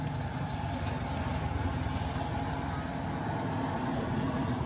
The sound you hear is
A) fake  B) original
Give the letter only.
B